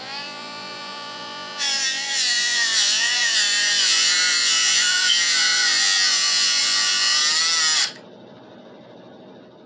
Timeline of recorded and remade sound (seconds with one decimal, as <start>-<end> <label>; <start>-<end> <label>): 0.0-7.2 remade; 7.2-9.7 recorded